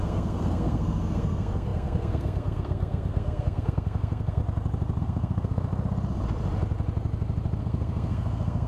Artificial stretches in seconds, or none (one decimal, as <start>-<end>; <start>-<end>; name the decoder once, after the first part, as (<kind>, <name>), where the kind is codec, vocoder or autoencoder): 0.0-4.4 (codec, SNAC); 5.0-5.7; 7.6-8.7